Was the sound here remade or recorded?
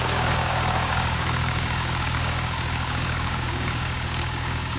remade